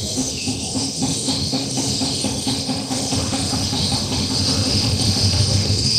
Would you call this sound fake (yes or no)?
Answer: yes